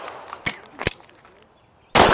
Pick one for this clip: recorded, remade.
recorded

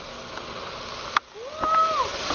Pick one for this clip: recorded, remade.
recorded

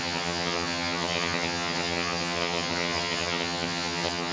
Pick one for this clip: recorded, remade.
remade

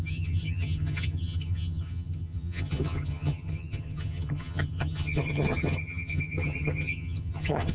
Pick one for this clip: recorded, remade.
remade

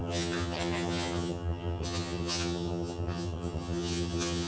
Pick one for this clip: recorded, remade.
remade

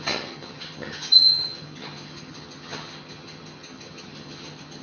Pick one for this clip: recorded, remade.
remade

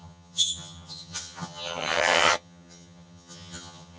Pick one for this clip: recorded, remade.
remade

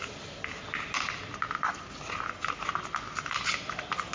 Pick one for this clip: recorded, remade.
recorded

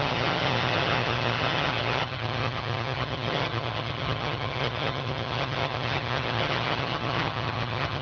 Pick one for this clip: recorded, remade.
remade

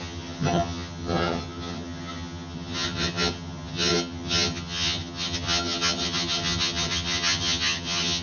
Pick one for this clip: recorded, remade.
remade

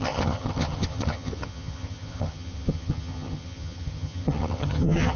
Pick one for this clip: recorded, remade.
remade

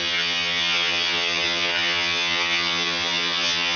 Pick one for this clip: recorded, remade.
remade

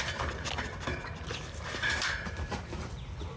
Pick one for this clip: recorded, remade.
recorded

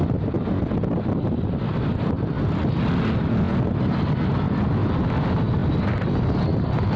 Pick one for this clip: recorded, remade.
recorded